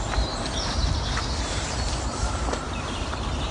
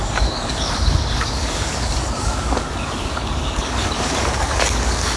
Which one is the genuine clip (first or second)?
first